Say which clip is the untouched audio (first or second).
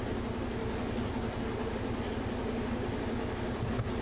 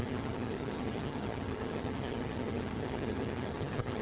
first